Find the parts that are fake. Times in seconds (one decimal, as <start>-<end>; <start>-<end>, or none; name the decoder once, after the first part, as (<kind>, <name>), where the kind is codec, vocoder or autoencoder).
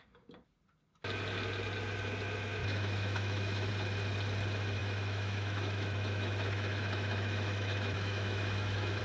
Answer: 2.6-3.7 (autoencoder, DAC-VAE); 4.8-9.0